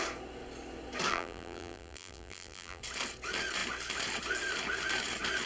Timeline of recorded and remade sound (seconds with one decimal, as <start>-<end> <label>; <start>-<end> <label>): 0.0-1.1 recorded; 1.1-2.8 remade; 2.8-5.5 recorded